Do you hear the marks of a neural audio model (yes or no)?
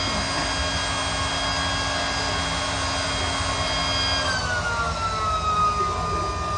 no